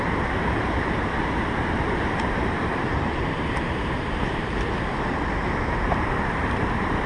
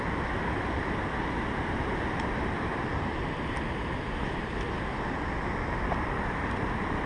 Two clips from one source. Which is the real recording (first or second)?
second